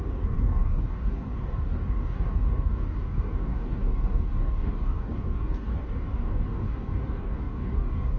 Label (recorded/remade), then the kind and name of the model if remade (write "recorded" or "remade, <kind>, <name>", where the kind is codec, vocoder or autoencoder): remade, codec, DAC